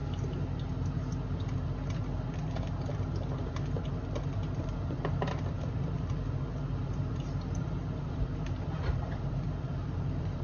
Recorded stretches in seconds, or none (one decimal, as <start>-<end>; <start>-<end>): 0.0-4.6